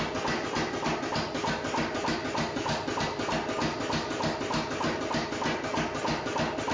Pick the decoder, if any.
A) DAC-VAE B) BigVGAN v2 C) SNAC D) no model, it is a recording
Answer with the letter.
D